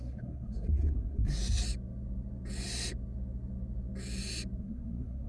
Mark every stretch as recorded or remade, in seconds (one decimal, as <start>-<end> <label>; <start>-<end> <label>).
0.0-1.4 remade; 1.4-4.6 recorded; 4.6-5.3 remade